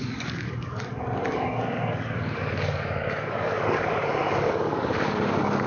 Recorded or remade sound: remade